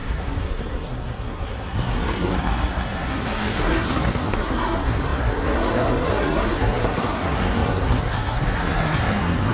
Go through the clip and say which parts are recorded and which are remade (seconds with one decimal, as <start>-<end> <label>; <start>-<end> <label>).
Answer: 0.0-9.5 remade